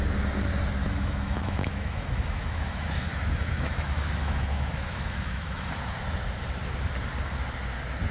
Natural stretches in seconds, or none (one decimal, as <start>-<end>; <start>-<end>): 0.0-0.8; 5.7-8.1